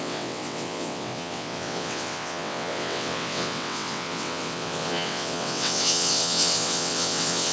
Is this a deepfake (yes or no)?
yes